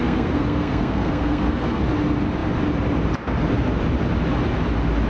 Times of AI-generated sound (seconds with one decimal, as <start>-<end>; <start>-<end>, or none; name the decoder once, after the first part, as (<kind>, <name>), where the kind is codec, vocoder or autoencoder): 0.0-1.8 (codec, SNAC)